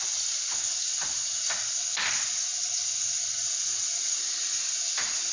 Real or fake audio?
real